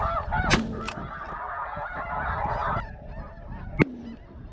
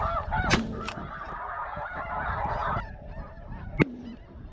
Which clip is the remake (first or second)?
second